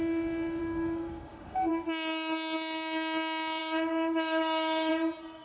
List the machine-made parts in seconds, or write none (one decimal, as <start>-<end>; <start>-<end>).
0.6-1.7; 3.6-4.9